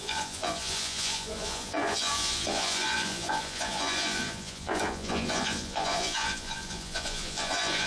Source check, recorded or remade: remade